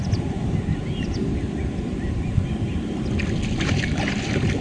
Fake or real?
real